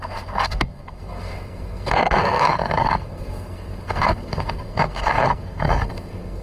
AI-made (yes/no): yes